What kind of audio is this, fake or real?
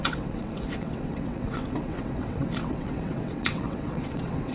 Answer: fake